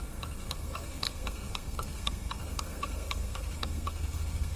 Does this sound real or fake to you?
fake